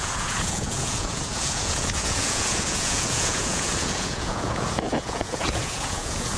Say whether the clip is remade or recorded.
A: remade